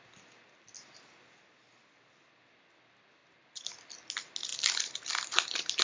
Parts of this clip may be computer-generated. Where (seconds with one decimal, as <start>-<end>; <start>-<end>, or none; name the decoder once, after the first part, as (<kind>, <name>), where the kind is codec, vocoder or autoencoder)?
3.2-3.9 (vocoder, BigVGAN v2); 4.5-5.1